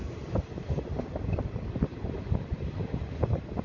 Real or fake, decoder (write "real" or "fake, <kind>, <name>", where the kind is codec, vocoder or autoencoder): real